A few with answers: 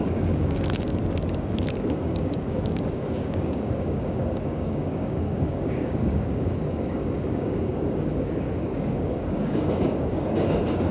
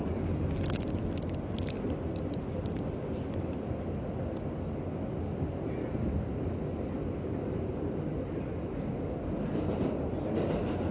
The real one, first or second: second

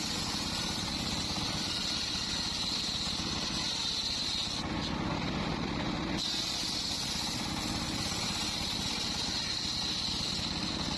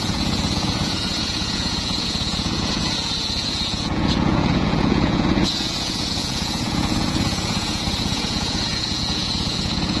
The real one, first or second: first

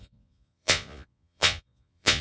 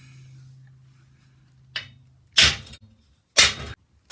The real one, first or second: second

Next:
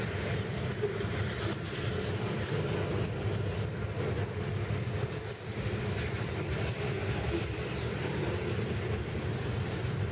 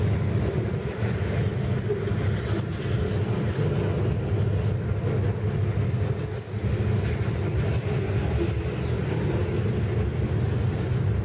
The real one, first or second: second